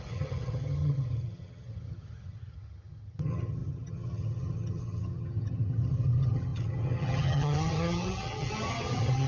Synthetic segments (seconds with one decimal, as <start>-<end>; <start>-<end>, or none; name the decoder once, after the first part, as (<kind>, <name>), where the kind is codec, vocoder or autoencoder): 0.0-9.3 (vocoder, HiFi-GAN)

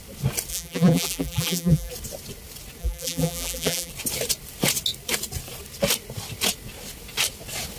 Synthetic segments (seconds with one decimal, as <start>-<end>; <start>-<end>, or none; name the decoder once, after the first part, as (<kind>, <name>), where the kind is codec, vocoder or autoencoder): 0.5-1.9 (vocoder, BigVGAN v2); 2.8-3.9

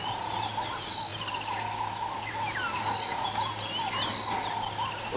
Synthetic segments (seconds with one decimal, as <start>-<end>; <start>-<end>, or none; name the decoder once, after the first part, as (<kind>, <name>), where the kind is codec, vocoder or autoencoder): none

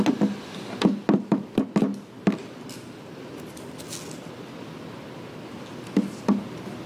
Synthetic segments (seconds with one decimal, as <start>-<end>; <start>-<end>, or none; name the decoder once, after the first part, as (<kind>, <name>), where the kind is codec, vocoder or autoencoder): none